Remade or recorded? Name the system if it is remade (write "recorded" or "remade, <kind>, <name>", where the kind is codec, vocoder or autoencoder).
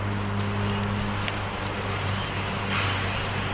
recorded